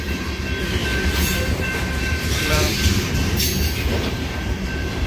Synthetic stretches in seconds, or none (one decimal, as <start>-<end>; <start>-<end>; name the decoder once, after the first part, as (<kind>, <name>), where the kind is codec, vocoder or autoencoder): 0.0-5.1 (vocoder, BigVGAN v2)